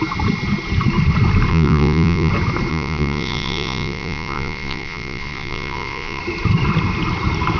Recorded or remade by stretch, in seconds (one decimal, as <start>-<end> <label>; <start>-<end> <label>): 0.0-1.5 recorded; 1.5-2.3 remade; 2.3-2.7 recorded; 2.7-6.2 remade; 6.2-7.6 recorded